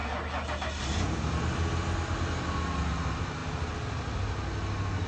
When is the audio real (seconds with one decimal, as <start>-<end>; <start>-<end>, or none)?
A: 0.0-5.1